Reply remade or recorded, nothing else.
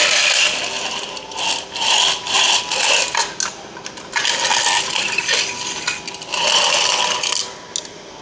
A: recorded